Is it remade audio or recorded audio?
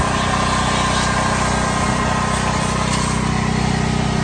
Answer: recorded